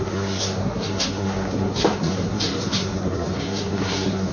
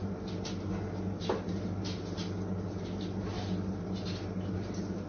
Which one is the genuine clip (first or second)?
second